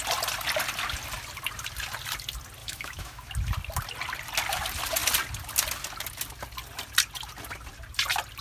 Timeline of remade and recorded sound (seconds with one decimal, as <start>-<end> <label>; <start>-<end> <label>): 0.0-2.6 recorded; 2.6-3.3 remade; 3.3-8.4 recorded